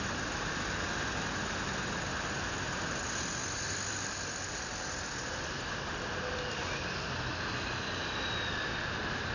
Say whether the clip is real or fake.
real